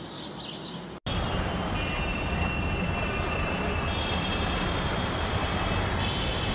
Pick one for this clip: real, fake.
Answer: real